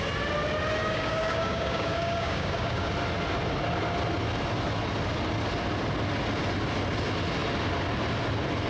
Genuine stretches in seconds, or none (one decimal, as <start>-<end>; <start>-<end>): 0.0-0.8; 2.9-8.7